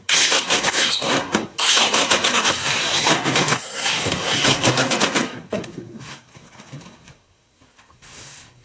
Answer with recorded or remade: remade